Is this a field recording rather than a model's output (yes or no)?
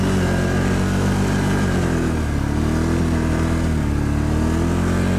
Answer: yes